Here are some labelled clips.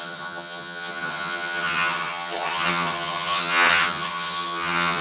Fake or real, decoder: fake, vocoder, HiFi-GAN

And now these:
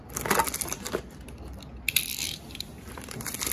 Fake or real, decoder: real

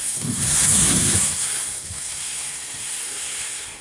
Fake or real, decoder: fake, codec, SNAC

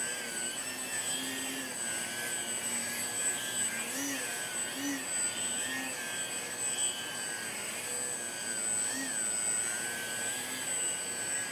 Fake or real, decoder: real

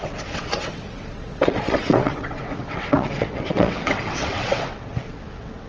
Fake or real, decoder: fake, vocoder, WaveNeXt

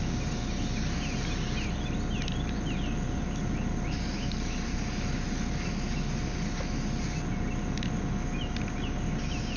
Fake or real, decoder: real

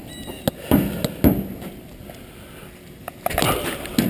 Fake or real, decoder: real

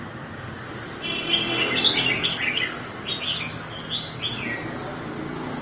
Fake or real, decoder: real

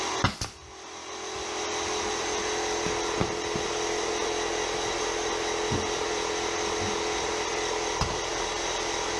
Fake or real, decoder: real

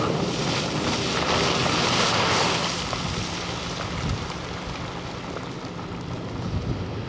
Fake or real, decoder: real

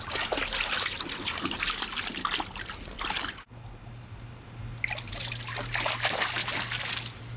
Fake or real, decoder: real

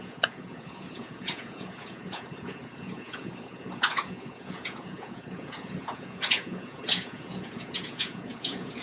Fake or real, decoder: fake, vocoder, Vocos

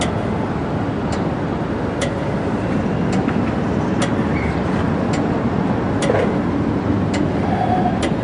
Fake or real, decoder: real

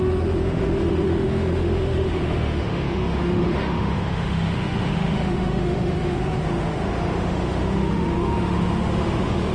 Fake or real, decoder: fake, autoencoder, DAC-VAE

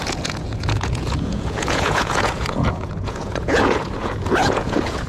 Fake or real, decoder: fake, vocoder, Vocos